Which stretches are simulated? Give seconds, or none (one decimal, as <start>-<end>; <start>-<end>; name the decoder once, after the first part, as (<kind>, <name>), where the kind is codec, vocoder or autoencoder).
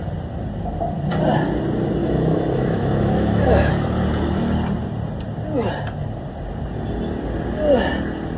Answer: 2.0-3.7 (autoencoder, DAC-VAE)